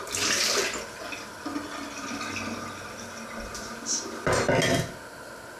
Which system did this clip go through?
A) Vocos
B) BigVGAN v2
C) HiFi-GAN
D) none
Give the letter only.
D